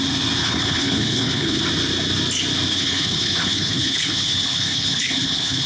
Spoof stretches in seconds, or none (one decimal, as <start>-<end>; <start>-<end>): 0.4-1.6; 2.7-5.7